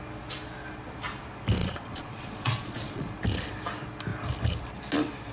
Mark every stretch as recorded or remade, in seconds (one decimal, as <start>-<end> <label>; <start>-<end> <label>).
0.0-1.6 recorded; 1.6-3.2 remade; 3.2-5.3 recorded